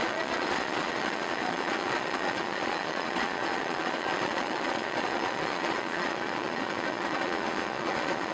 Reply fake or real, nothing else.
fake